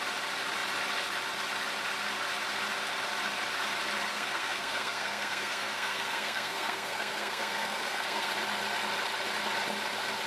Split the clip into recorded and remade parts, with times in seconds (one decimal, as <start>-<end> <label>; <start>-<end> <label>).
0.0-4.1 recorded; 4.1-8.3 remade; 8.3-10.3 recorded